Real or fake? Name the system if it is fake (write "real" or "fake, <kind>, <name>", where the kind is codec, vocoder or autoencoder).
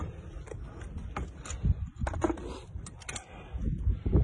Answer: real